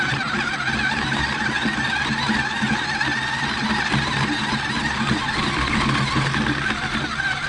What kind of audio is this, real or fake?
real